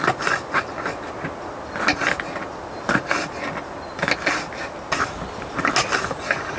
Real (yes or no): yes